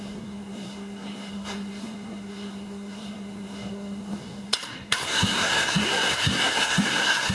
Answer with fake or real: fake